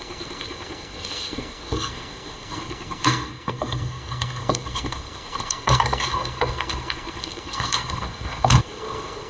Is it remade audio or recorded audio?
remade